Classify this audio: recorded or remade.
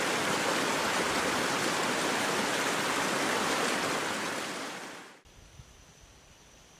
remade